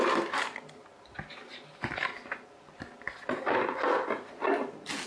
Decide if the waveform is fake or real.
real